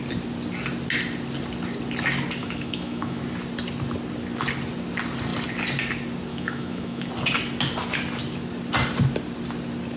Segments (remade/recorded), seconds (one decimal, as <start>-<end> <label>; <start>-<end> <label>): 0.0-2.4 recorded; 2.4-3.2 remade; 3.2-6.3 recorded; 6.3-7.1 remade; 7.1-10.0 recorded